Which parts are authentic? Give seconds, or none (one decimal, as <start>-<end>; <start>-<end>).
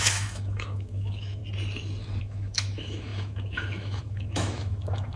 1.4-2.2